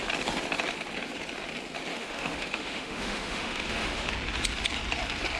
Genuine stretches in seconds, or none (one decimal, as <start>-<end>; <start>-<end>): 0.0-1.9; 4.1-5.4